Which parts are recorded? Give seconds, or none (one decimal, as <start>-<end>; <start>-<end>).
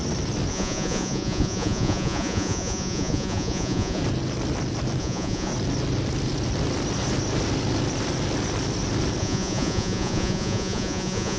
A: 0.0-0.5; 4.0-5.0; 5.5-9.2